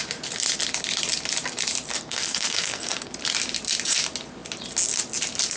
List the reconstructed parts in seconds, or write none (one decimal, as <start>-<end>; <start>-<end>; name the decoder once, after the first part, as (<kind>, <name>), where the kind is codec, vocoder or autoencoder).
1.9-3.1 (codec, SNAC)